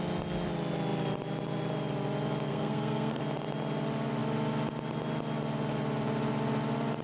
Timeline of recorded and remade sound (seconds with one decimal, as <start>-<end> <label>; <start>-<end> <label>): 0.0-2.5 recorded; 2.5-3.2 remade; 3.2-7.0 recorded